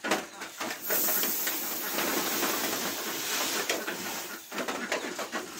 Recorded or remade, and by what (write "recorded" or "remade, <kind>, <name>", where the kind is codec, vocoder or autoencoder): recorded